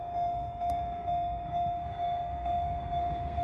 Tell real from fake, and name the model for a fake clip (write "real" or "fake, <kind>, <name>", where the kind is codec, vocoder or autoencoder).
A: fake, codec, SNAC